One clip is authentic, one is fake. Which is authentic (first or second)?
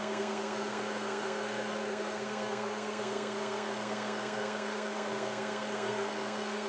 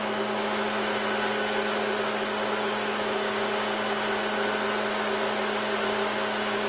second